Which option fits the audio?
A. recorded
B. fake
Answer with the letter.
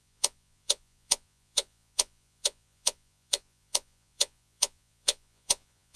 B